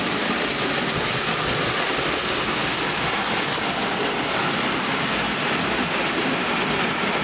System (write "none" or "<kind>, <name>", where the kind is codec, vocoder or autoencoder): none